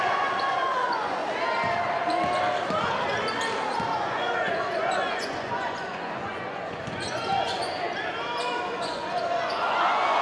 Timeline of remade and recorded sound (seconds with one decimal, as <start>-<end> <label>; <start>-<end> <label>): 0.0-1.2 remade; 1.2-3.9 recorded; 3.9-7.9 remade; 7.9-8.7 recorded; 8.7-10.2 remade